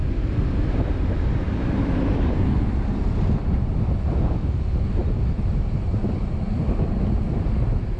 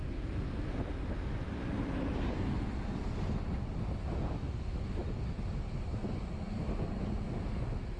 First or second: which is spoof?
first